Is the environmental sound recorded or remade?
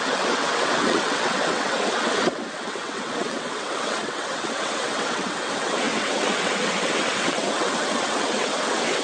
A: remade